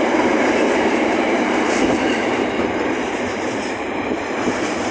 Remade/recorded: remade